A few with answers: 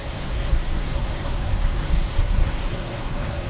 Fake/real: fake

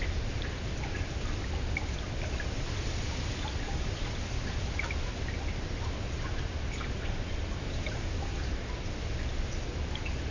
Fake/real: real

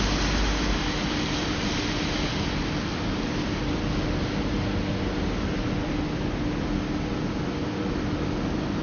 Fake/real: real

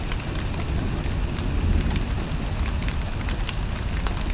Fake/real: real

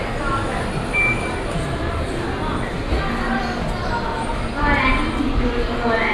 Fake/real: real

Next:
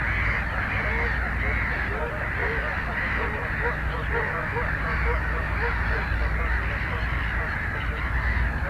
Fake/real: real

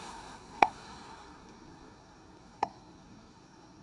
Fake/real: fake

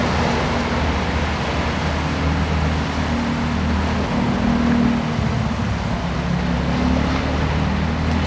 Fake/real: real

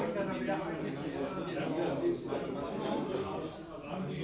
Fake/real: real